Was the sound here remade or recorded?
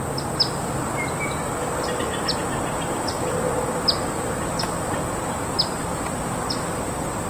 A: recorded